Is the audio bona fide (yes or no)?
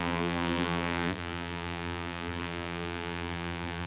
no